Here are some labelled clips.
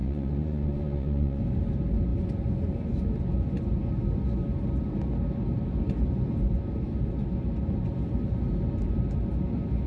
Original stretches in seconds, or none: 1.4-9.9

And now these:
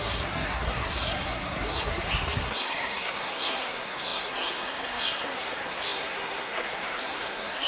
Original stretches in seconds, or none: none